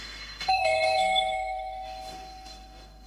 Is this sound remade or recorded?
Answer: remade